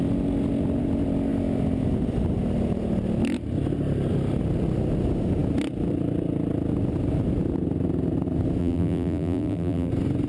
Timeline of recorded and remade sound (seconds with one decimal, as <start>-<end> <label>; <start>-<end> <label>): 0.0-8.6 recorded; 8.6-9.9 remade; 9.9-10.3 recorded